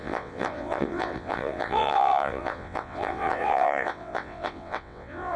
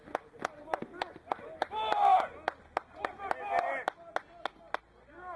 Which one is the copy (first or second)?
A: first